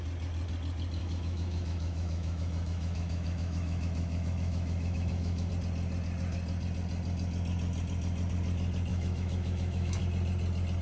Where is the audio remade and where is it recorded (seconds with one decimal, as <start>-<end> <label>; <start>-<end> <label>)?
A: 0.0-1.0 recorded; 1.0-5.5 remade; 5.5-8.9 recorded; 8.9-10.0 remade; 10.0-10.8 recorded